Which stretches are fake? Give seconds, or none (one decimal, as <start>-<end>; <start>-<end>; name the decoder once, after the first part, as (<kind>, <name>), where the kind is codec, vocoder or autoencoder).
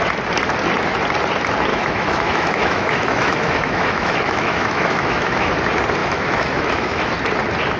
1.7-5.5 (autoencoder, DAC-VAE); 6.0-7.1